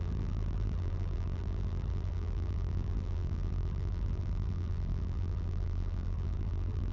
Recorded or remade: remade